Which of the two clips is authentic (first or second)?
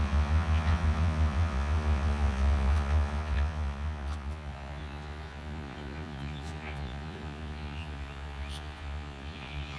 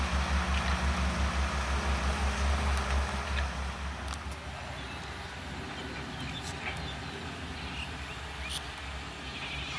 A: second